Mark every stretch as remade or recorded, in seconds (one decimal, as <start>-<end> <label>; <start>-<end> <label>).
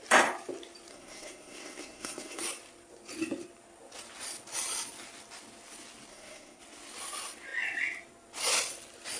0.0-0.9 recorded; 0.9-2.4 remade; 2.4-6.1 recorded; 6.1-6.6 remade; 6.6-9.2 recorded